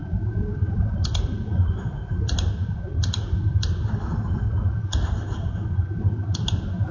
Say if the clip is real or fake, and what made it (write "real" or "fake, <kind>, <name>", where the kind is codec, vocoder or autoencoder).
real